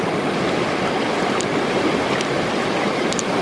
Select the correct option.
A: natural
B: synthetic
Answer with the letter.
A